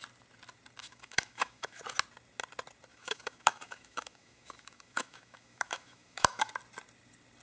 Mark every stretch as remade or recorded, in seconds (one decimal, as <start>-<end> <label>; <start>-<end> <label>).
0.0-0.8 recorded; 0.8-1.8 remade; 1.8-2.9 recorded; 2.9-6.5 remade; 6.5-7.4 recorded